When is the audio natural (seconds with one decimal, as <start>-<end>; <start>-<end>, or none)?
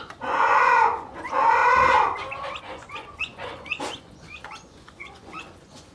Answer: 1.6-2.6